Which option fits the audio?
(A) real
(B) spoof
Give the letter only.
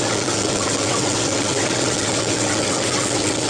B